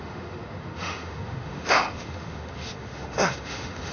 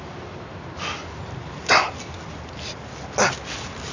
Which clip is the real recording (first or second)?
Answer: second